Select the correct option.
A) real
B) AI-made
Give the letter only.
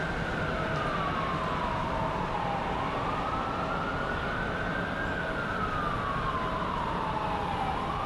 A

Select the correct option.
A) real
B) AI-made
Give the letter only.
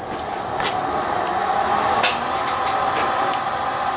A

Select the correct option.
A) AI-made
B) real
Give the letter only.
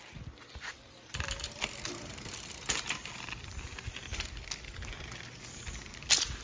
B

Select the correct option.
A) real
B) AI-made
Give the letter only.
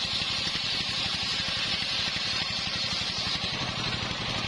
B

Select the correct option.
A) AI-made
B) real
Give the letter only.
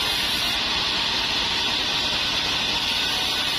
B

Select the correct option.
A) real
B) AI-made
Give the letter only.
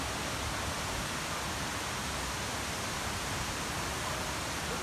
A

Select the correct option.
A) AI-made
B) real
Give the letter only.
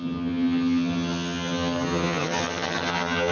A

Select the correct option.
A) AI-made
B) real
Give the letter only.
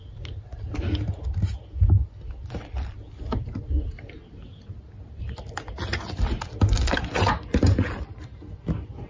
B